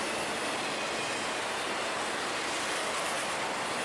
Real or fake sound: real